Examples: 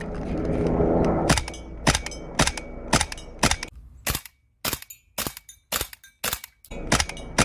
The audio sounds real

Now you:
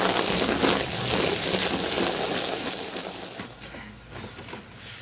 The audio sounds real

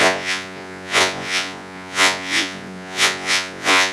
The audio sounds fake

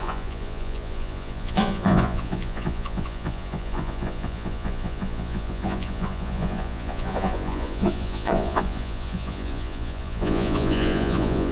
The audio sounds fake